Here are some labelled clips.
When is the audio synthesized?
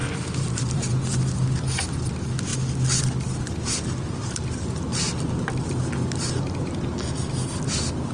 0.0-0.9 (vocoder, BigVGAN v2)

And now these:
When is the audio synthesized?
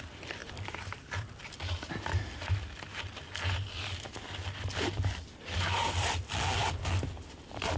0.4-1.9 (vocoder, BigVGAN v2); 5.8-6.3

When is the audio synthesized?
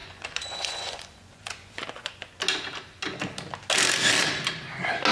0.0-2.4 (vocoder, Vocos)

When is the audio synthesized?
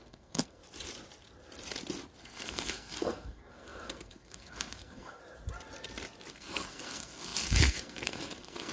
0.0-0.6 (codec, SNAC); 2.2-5.2; 6.3-8.7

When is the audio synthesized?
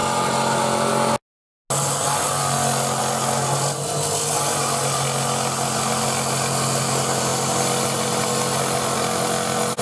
none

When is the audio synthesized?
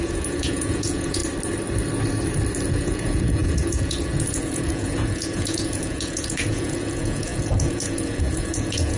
0.0-1.2 (vocoder, Vocos); 2.7-9.0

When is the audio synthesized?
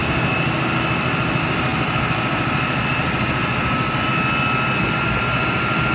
none